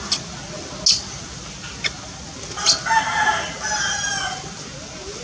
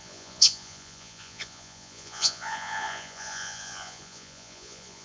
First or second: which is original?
first